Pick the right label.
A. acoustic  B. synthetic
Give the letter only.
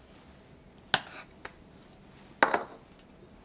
A